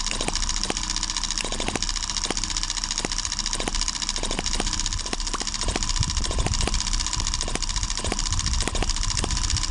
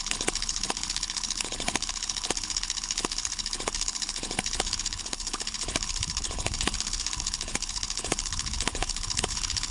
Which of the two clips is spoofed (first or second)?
second